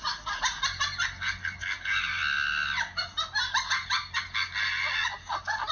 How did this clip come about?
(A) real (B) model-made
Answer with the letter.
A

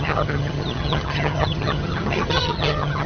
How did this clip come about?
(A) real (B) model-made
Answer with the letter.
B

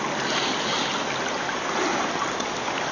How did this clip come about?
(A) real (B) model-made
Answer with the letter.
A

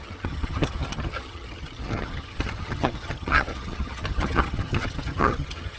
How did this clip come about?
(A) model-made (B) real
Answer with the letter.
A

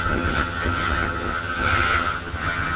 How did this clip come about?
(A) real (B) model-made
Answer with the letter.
B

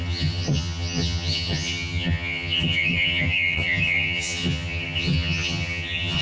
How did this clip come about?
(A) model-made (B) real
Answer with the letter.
A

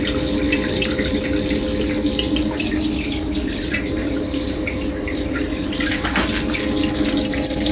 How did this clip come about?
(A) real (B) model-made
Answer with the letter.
A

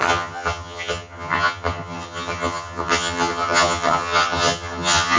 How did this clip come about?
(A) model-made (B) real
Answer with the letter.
A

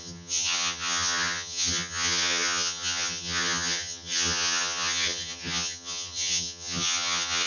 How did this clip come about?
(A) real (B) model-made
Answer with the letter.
B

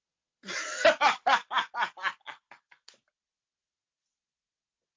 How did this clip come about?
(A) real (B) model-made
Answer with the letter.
A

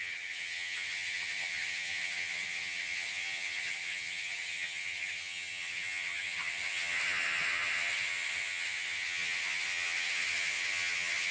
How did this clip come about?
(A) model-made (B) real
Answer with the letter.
A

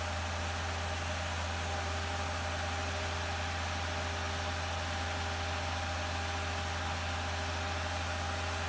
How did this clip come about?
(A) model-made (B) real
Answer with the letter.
B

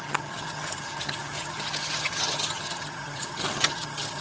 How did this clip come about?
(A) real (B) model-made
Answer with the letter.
B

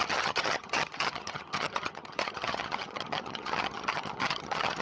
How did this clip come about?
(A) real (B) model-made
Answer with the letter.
B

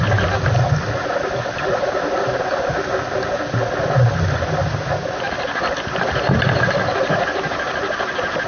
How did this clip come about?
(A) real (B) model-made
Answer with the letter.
A